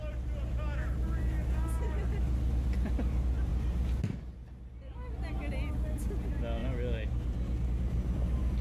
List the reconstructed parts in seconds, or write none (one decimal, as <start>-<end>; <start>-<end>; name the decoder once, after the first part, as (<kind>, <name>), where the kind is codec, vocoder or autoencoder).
none